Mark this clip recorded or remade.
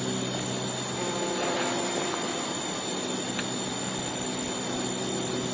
recorded